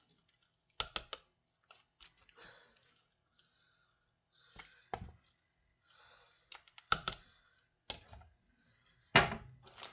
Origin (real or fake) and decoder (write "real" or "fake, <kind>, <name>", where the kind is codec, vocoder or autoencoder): real